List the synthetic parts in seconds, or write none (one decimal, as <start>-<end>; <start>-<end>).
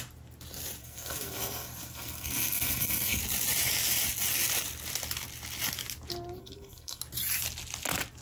0.8-3.2; 6.4-7.0